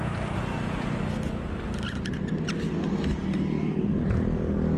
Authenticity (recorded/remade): recorded